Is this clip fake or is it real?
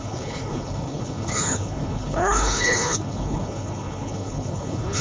fake